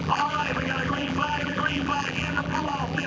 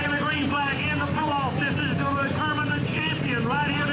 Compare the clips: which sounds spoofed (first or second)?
first